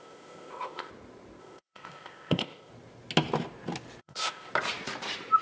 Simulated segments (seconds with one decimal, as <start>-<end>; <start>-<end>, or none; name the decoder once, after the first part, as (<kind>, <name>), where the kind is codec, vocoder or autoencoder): 0.0-0.9 (codec, ZipCodec); 1.4-2.7; 4.0-4.5